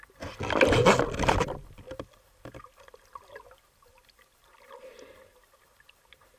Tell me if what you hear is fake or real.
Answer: real